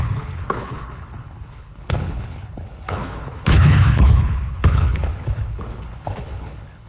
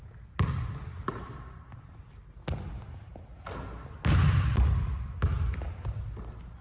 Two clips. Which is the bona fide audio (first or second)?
second